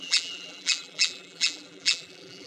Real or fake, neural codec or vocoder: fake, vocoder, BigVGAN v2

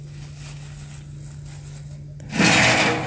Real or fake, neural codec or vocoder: real